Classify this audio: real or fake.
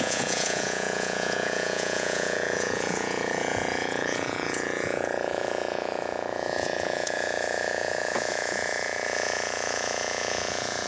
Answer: fake